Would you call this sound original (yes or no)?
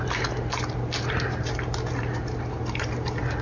yes